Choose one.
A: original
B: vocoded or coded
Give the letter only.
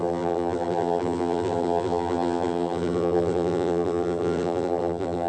B